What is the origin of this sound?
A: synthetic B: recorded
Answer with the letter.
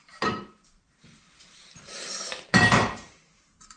A